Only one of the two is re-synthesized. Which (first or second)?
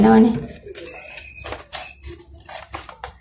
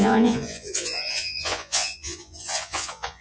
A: second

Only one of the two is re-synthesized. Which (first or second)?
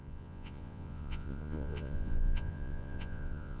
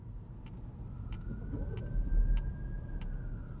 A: first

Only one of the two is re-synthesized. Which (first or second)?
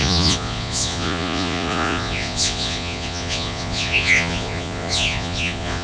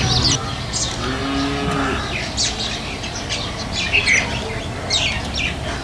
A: first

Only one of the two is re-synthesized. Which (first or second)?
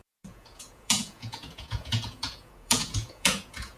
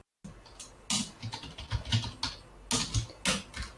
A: first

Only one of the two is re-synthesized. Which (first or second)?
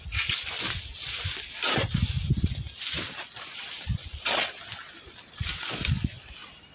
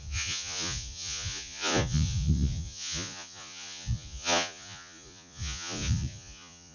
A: second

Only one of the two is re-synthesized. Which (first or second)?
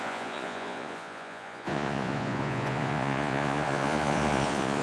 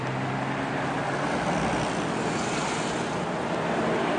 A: first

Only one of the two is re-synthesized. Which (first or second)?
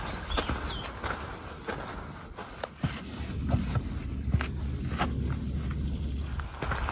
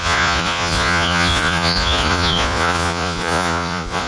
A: second